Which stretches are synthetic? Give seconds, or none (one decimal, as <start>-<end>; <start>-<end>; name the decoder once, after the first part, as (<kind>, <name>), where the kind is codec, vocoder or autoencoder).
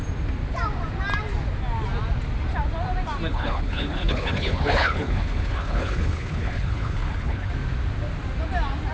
3.3-7.5 (codec, HILCodec)